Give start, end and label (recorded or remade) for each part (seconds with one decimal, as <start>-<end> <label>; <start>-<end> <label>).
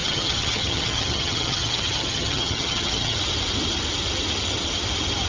0.0-3.2 remade; 3.2-5.3 recorded